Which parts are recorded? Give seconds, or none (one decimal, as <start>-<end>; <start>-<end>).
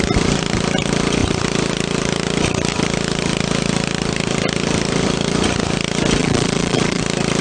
0.0-6.2; 7.0-7.4